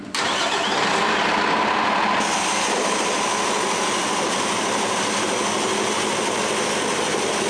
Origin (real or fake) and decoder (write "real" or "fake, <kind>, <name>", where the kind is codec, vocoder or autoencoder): real